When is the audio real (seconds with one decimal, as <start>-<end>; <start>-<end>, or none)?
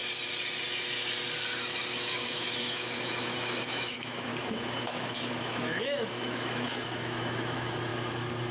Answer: 0.0-1.9; 4.3-4.8; 7.9-8.5